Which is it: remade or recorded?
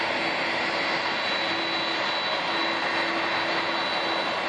recorded